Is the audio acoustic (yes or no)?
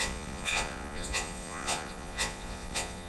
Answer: no